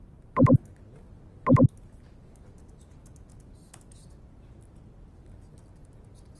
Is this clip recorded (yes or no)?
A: yes